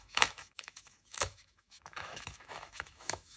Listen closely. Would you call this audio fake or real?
fake